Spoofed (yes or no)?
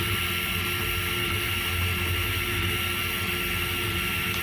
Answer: no